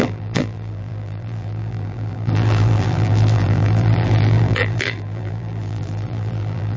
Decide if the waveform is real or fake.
fake